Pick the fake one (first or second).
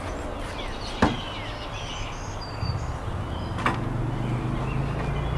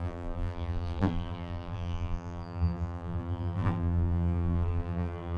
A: second